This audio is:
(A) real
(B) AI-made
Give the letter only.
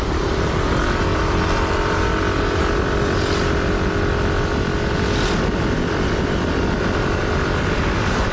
A